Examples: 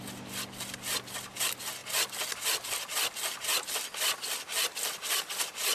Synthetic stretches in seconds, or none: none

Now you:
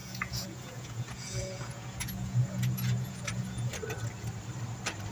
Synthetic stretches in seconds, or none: 0.0-3.7 (vocoder, Vocos)

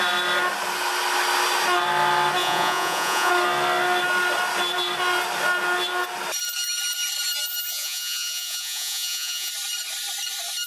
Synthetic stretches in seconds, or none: 2.4-3.3 (vocoder, Vocos); 7.7-9.5

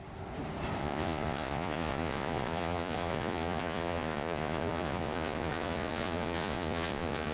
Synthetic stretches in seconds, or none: 0.8-7.3 (vocoder, Vocos)